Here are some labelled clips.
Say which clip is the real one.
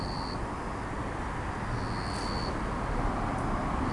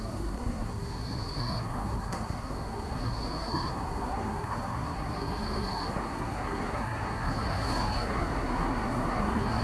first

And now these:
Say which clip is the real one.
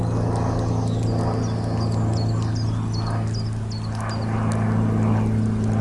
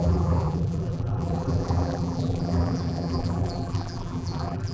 first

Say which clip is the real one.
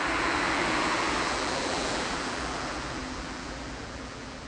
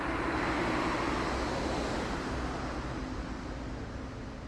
second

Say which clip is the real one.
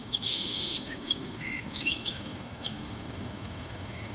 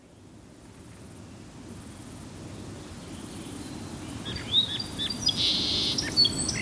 second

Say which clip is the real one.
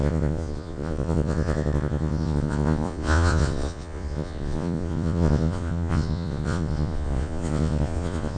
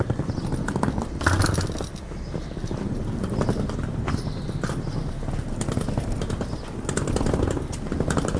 second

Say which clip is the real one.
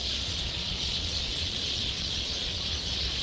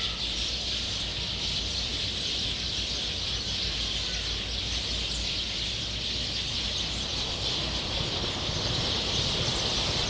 second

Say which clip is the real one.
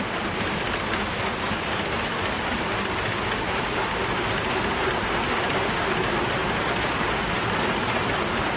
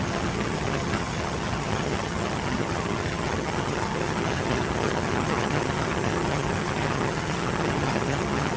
first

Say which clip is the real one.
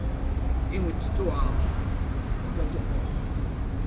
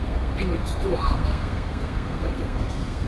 first